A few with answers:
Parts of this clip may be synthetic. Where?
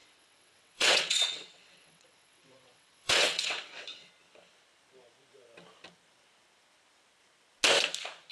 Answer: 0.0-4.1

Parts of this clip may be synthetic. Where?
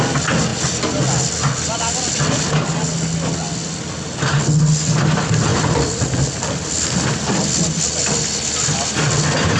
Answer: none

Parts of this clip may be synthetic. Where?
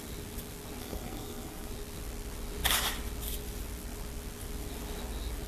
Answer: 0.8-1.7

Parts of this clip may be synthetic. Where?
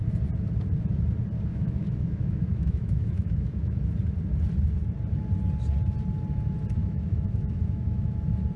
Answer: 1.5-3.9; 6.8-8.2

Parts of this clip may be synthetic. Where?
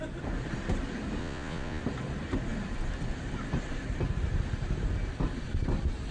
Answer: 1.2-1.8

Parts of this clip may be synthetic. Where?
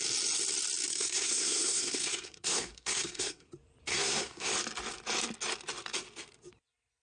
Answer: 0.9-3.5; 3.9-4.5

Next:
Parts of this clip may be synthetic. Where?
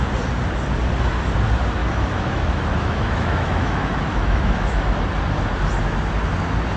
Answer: 1.8-4.9